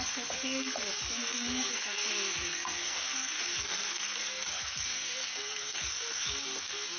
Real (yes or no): no